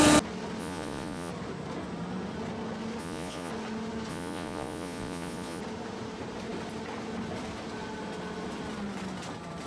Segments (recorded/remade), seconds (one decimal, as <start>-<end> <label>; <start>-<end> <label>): 0.0-0.6 recorded; 0.6-1.3 remade; 1.3-3.0 recorded; 3.0-3.5 remade; 3.5-4.1 recorded; 4.1-5.6 remade; 5.6-9.7 recorded